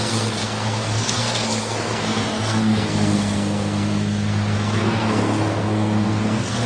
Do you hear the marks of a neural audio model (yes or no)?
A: yes